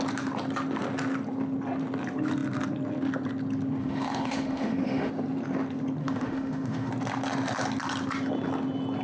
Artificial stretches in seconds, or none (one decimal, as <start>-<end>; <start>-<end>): 3.8-5.1; 6.0-6.9